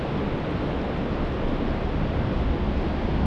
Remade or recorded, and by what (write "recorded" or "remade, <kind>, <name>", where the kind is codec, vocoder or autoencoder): recorded